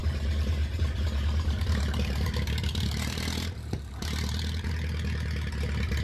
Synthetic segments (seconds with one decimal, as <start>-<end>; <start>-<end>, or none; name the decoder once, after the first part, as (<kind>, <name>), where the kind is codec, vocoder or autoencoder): 0.0-2.3 (vocoder, BigVGAN v2); 2.7-4.7